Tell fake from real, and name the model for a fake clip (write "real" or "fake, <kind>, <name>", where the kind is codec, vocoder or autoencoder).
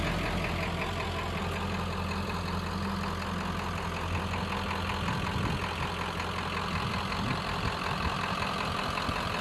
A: real